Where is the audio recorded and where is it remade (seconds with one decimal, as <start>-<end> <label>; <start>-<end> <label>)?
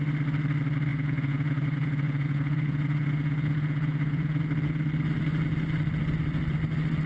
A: 0.0-0.9 recorded; 0.9-4.4 remade; 4.4-7.1 recorded